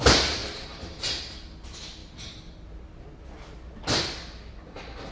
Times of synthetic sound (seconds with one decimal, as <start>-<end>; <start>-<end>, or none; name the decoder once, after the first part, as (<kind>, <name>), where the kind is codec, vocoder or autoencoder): 0.0-0.4 (vocoder, BigVGAN v2); 1.6-2.0